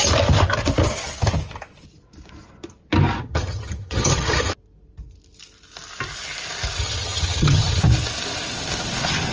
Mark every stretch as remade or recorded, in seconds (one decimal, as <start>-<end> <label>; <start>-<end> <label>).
0.0-3.2 recorded; 3.2-4.5 remade; 4.5-6.8 recorded; 6.8-7.8 remade; 7.8-9.3 recorded